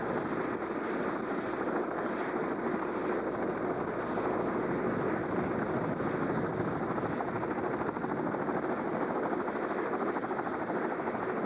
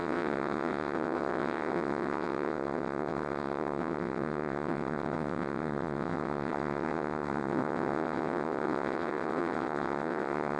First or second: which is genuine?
first